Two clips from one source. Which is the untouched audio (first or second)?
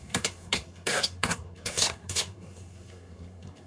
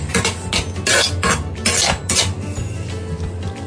second